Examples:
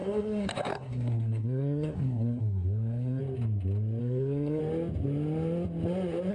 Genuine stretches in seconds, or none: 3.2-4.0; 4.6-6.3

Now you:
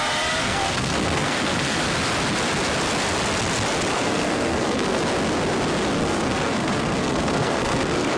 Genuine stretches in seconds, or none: 0.0-0.4; 1.8-3.9; 5.0-6.0

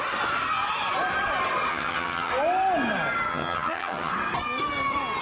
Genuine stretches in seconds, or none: 0.0-1.7; 2.3-3.3; 4.1-5.2

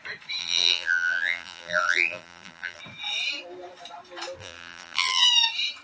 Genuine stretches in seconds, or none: 0.0-0.4; 2.8-4.4; 5.2-5.8

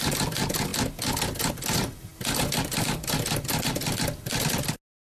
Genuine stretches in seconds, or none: 0.0-5.2

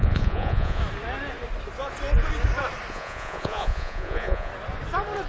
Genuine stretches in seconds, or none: 0.8-2.9; 4.5-5.3

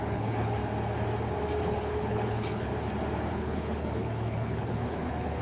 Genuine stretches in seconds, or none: 0.6-1.6; 2.7-3.3

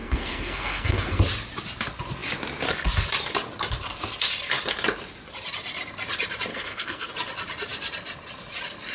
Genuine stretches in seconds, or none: 1.2-6.5; 7.1-8.9